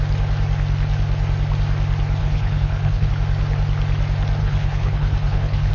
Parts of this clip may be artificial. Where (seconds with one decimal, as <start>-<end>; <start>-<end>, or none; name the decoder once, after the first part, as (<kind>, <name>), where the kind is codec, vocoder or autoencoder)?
2.2-3.1 (codec, HILCodec); 4.4-5.7